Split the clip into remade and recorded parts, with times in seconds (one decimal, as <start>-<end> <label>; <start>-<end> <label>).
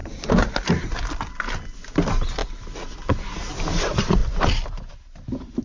0.0-0.7 remade; 0.7-2.4 recorded; 2.4-3.5 remade; 3.5-4.2 recorded; 4.2-4.9 remade; 4.9-5.6 recorded